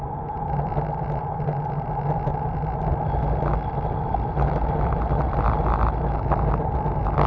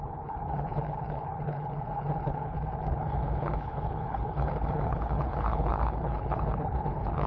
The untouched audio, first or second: first